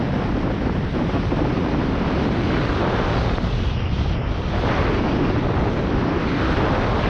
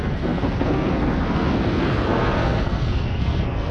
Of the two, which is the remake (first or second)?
second